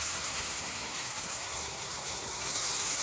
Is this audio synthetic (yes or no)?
yes